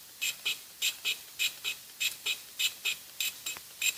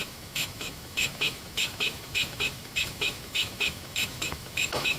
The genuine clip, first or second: first